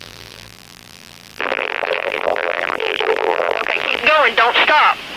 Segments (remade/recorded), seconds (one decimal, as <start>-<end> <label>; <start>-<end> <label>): 0.0-4.0 remade; 4.0-5.2 recorded